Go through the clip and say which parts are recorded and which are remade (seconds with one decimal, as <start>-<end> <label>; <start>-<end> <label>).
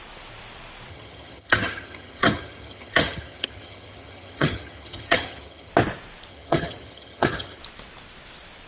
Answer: 0.0-0.9 recorded; 0.9-5.7 remade; 5.7-6.3 recorded; 6.3-7.6 remade; 7.6-8.7 recorded